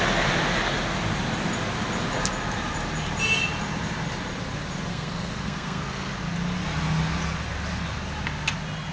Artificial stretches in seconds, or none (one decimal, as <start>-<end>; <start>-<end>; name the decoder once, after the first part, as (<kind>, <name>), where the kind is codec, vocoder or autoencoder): 4.9-6.1 (codec, SNAC)